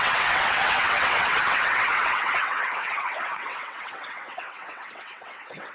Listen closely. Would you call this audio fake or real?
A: fake